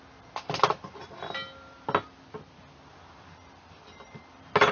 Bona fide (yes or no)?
yes